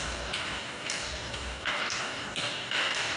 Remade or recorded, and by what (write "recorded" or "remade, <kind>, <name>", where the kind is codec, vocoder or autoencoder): remade, codec, DAC